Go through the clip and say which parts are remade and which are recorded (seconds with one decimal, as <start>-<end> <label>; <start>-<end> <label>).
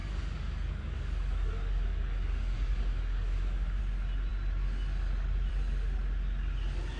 0.0-3.8 remade; 3.8-7.0 recorded